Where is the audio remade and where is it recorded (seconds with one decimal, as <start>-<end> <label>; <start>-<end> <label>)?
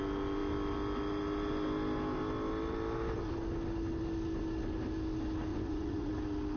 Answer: 0.0-5.5 recorded; 5.5-6.1 remade; 6.1-6.6 recorded